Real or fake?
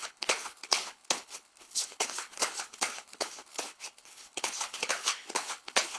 fake